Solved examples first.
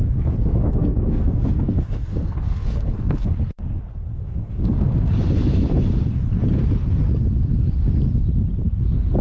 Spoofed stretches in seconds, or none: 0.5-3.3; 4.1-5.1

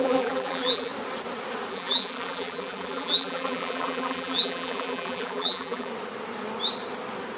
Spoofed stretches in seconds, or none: 0.0-0.9; 1.7-5.9

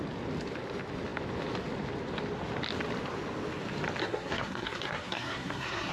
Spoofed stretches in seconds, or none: 4.0-5.9

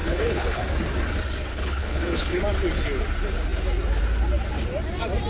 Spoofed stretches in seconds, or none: 0.0-0.6; 1.5-2.4